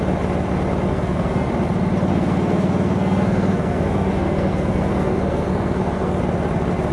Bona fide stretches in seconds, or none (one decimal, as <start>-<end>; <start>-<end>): 0.0-0.9; 1.5-2.1; 6.2-6.9